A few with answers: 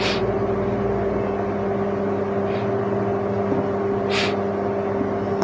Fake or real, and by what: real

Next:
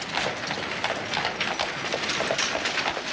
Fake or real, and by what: real